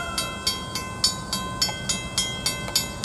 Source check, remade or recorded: recorded